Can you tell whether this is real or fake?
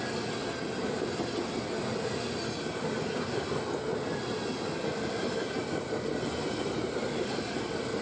real